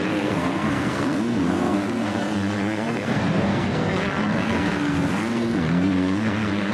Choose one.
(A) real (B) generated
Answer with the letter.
B